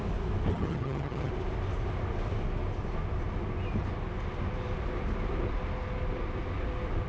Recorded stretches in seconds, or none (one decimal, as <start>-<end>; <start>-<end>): 0.0-0.5; 1.3-7.1